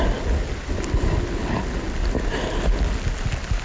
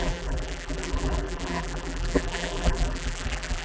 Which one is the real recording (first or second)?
first